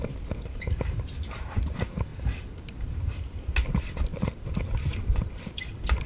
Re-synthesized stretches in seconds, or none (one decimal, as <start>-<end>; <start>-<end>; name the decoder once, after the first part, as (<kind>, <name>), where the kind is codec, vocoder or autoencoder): none